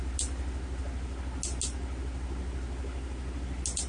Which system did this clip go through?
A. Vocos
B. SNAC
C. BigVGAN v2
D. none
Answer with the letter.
D